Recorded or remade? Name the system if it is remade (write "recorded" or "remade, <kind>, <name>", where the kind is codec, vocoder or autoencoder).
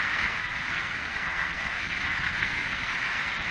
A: remade, codec, SNAC